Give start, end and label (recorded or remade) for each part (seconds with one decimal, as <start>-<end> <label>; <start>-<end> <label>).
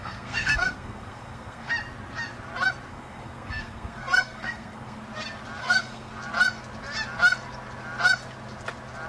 0.0-1.7 remade; 1.7-2.9 recorded; 2.9-5.0 remade; 5.0-5.6 recorded; 5.6-6.1 remade; 6.1-9.1 recorded